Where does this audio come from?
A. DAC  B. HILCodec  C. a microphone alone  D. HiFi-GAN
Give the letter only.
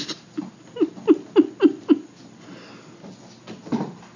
C